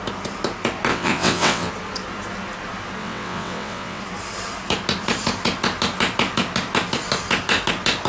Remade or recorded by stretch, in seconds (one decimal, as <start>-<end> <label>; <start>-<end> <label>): 0.0-0.9 recorded; 0.9-1.7 remade; 1.7-3.0 recorded; 3.0-4.0 remade; 4.0-8.1 recorded